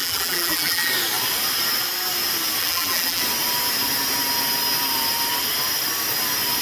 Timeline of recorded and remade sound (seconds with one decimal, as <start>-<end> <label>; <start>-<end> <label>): 0.0-0.9 remade; 0.9-2.6 recorded; 2.6-3.2 remade; 3.2-6.6 recorded